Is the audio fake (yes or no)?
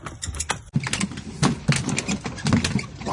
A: no